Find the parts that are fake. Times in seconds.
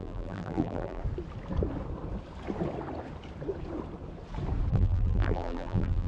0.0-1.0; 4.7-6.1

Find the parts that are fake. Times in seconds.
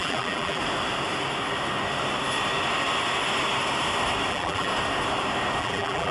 0.0-0.6; 4.3-4.7; 5.6-6.1